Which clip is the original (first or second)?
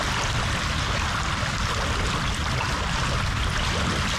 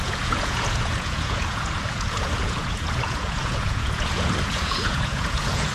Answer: first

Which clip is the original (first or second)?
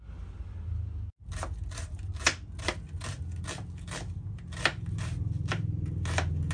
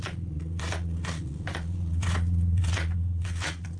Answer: first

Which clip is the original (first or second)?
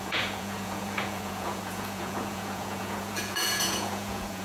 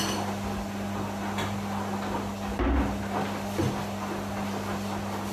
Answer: second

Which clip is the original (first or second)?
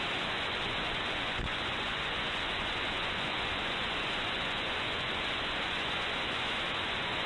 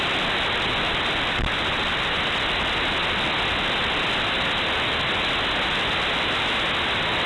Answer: second